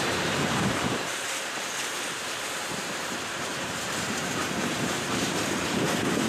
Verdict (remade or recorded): remade